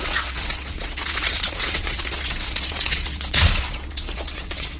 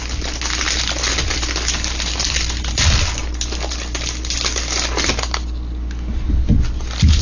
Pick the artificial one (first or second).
first